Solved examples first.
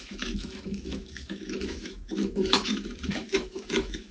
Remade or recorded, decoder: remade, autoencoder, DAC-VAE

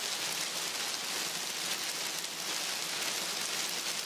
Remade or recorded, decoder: recorded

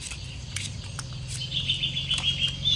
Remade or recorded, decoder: recorded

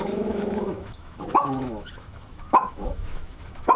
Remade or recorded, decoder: remade, autoencoder, DAC-VAE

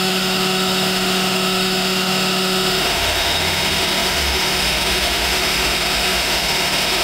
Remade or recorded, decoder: remade, autoencoder, DAC-VAE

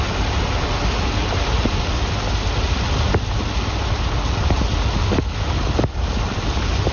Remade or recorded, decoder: recorded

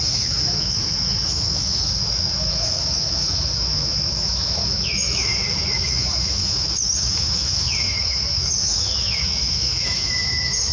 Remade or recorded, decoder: remade, autoencoder, DAC-VAE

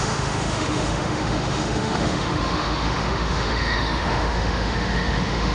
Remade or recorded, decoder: remade, autoencoder, DAC-VAE